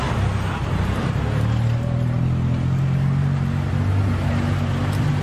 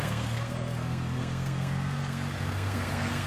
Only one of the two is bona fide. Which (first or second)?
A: first